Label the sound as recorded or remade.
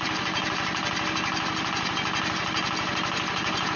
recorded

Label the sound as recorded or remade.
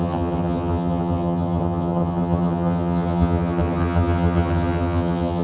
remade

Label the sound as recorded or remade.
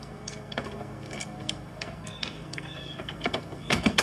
remade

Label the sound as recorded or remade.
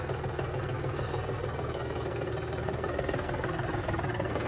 remade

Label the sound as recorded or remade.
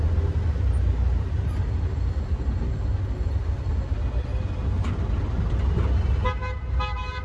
recorded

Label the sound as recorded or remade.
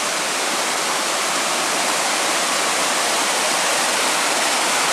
recorded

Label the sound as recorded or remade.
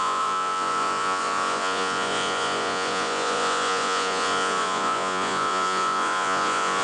remade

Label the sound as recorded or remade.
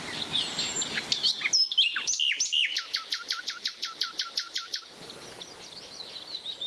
recorded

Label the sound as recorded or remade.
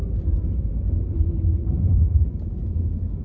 remade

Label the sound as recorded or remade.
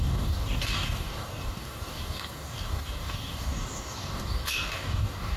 remade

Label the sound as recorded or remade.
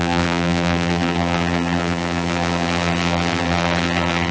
remade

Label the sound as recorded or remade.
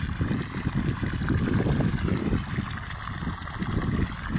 recorded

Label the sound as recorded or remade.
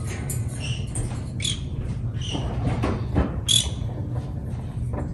recorded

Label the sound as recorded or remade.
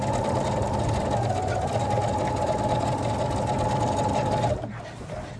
recorded